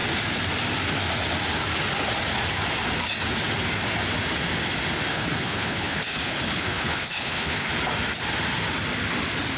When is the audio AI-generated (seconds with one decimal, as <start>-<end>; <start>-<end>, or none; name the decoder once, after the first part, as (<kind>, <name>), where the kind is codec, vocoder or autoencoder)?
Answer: 5.1-7.7 (codec, HILCodec)